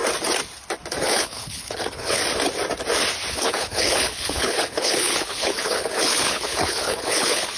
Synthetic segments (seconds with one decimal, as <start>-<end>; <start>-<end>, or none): 1.0-2.2; 3.3-7.6